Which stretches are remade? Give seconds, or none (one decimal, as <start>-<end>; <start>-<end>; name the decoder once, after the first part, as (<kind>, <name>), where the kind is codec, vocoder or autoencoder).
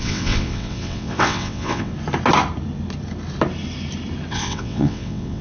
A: 0.0-1.9 (vocoder, WaveNeXt); 4.3-5.4